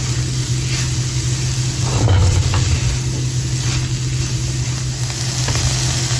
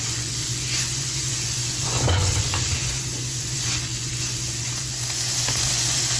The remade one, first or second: second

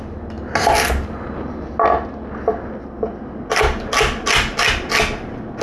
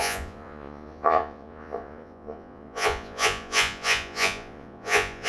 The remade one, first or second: second